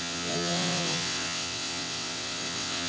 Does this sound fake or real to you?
fake